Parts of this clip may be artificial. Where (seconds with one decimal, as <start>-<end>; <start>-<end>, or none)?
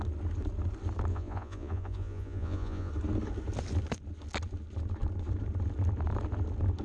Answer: 1.1-2.9